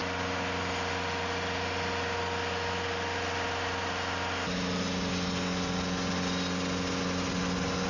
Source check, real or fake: real